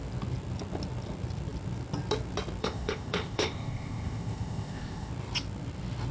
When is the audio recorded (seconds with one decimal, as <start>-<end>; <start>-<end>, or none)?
0.0-2.6; 5.1-6.1